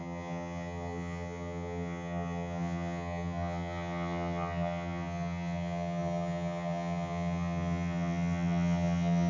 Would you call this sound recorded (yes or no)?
no